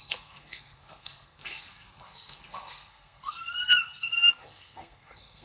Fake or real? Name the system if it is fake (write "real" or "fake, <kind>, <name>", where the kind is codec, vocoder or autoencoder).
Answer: fake, codec, SNAC